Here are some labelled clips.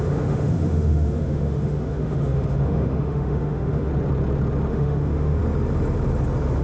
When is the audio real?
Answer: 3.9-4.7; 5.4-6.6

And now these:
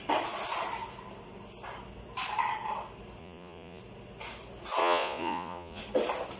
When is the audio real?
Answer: 0.0-3.2; 3.8-4.8; 5.8-6.4

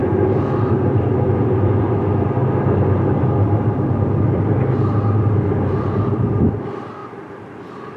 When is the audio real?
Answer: 0.7-2.4; 4.2-7.0